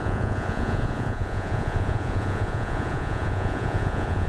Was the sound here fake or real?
fake